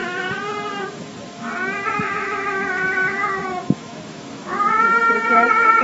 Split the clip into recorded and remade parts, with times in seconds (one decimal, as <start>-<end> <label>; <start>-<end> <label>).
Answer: 0.0-2.0 recorded; 2.0-5.8 remade